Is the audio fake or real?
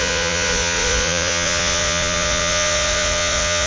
fake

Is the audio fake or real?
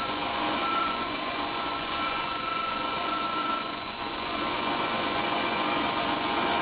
fake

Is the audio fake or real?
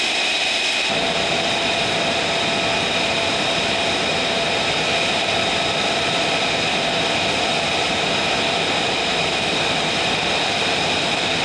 real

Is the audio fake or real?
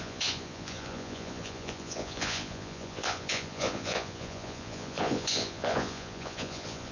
fake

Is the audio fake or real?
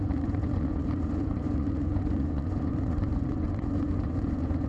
fake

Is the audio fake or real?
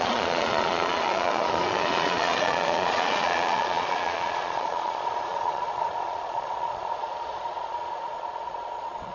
fake